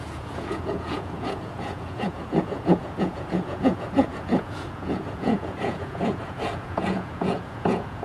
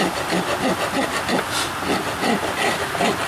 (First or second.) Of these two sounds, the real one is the second